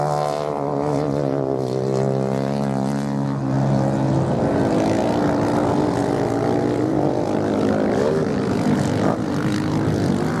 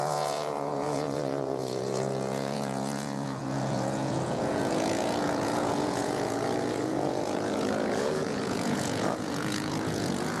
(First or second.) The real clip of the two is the first